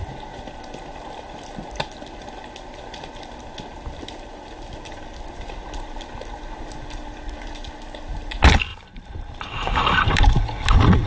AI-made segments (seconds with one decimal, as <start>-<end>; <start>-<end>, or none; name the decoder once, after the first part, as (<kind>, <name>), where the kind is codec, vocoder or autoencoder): 8.7-10.4 (vocoder, BigVGAN v2)